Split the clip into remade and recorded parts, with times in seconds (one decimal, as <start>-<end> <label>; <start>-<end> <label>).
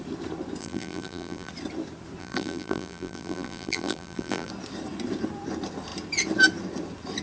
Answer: 0.0-0.6 recorded; 0.6-1.5 remade; 1.5-2.2 recorded; 2.2-4.5 remade; 4.5-7.2 recorded